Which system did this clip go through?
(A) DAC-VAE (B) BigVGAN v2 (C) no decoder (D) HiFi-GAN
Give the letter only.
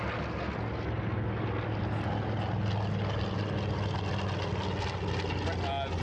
C